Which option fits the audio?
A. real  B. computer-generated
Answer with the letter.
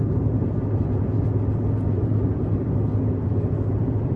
B